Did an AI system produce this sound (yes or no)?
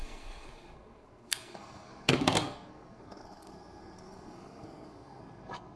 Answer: yes